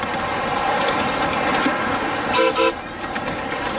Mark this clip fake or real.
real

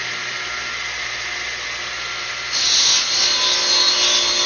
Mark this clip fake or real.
real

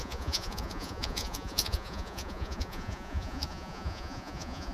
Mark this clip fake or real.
fake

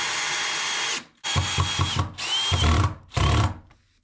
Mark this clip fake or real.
real